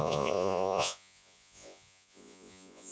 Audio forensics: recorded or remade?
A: remade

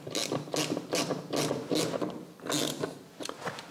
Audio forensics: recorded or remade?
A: recorded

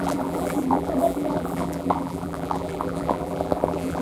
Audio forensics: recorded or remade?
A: remade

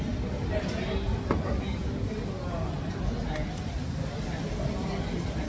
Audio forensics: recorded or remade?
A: recorded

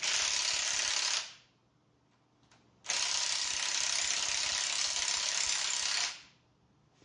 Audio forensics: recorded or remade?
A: recorded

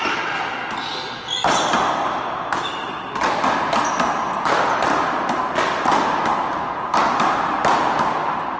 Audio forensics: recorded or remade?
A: recorded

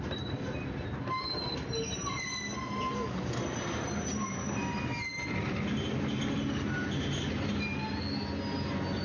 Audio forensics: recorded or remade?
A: recorded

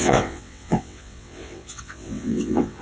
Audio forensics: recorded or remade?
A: remade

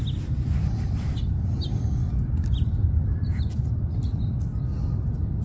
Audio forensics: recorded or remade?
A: recorded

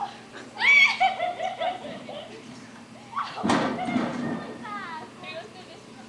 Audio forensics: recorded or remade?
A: recorded